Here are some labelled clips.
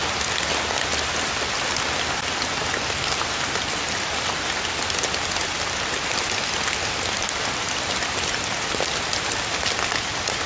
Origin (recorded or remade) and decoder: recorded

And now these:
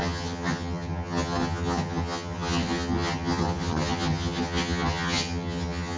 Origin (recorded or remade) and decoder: remade, vocoder, HiFi-GAN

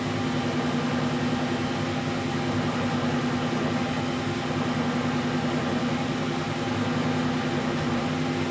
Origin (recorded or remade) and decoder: recorded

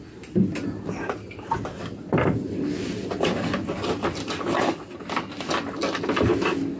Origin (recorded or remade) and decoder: recorded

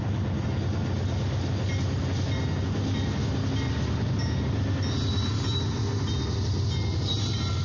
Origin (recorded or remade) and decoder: recorded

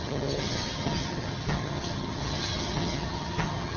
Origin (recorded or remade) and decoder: remade, vocoder, HiFi-GAN